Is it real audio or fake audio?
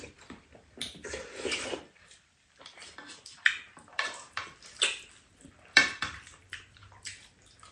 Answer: fake